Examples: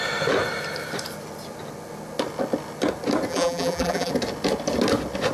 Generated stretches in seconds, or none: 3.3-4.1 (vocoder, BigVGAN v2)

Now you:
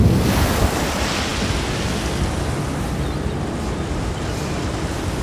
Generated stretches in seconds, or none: none

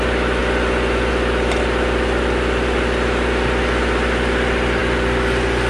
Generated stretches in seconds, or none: 0.0-0.4 (vocoder, BigVGAN v2); 1.1-5.7

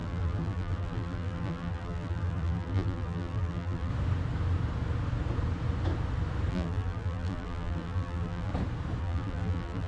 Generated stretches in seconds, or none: 0.0-3.9 (vocoder, BigVGAN v2); 6.5-8.5; 9.0-9.9

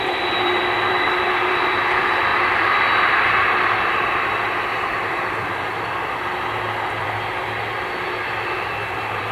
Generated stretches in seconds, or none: 0.0-2.3 (vocoder, BigVGAN v2); 3.9-9.3

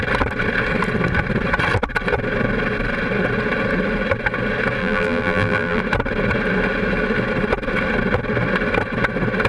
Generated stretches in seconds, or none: 4.8-5.8 (vocoder, BigVGAN v2)

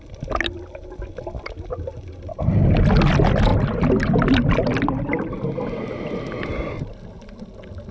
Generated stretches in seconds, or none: none